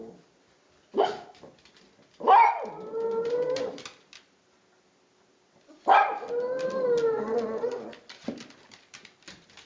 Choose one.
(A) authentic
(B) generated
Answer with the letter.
A